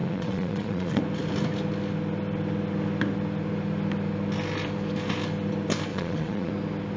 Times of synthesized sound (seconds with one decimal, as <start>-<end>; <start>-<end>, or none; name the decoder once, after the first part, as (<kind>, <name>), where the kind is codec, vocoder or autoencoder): 0.0-1.0 (vocoder, Vocos); 5.9-6.5